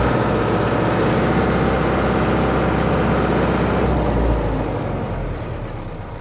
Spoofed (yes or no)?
no